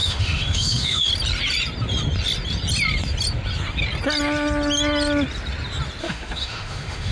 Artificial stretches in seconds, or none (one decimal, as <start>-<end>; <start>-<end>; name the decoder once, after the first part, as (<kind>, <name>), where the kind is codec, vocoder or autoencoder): 0.0-1.1 (autoencoder, DAC-VAE); 6.0-7.1